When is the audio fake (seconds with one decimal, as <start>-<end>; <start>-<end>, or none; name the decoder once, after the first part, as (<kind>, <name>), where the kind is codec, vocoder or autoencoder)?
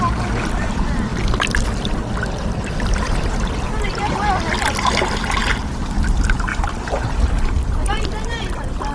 none